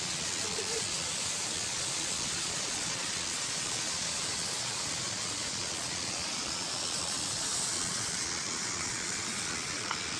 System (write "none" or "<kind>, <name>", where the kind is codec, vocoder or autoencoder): vocoder, Vocos